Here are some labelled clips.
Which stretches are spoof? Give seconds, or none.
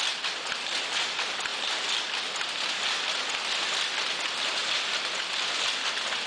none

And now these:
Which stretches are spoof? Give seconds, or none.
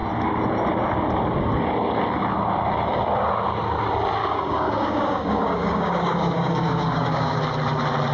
4.2-7.4 (codec, DAC)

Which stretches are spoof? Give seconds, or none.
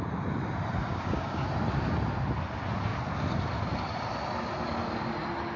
0.9-1.5 (codec, DAC)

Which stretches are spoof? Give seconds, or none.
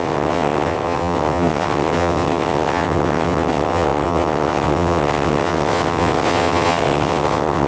0.0-7.7 (vocoder, WaveNeXt)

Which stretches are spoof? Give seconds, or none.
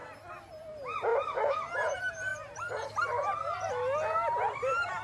1.1-1.7 (vocoder, BigVGAN v2); 2.3-2.9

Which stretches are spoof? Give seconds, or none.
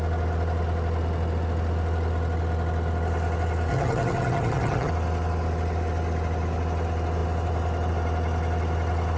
3.7-4.9 (vocoder, HiFi-GAN)